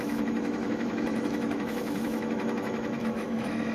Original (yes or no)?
no